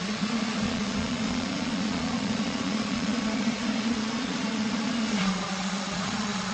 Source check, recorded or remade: remade